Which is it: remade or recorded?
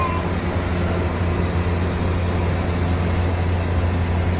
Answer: recorded